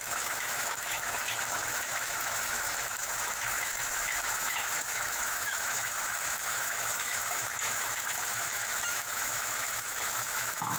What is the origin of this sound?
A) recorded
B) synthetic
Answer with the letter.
B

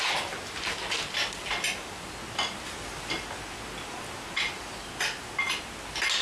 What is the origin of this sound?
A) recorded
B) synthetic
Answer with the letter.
A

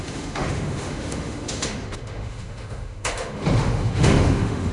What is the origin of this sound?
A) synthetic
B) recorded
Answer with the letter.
A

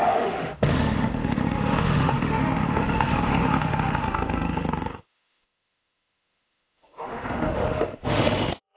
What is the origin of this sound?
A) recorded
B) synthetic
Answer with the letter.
B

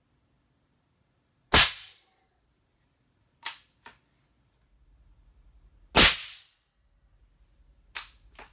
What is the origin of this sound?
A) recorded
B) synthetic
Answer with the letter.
A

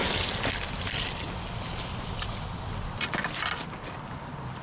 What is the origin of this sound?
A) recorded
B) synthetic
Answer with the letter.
A